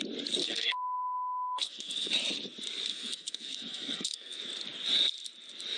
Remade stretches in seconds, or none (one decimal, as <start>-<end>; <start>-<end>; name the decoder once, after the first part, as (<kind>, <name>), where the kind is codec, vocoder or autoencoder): 0.4-2.1 (codec, SNAC); 2.9-4.4